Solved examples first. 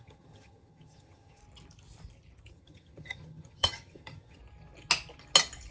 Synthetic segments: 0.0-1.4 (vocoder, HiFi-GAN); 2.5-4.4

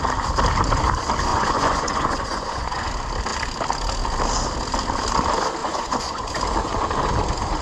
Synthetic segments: 1.3-2.9 (vocoder, Vocos); 5.6-6.3

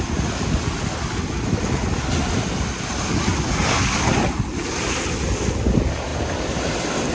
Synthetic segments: none

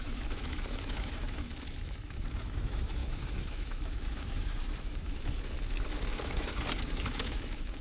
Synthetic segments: 0.0-7.8 (autoencoder, DAC-VAE)